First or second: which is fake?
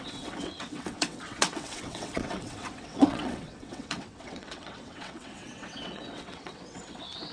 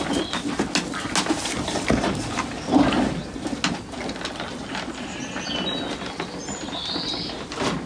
first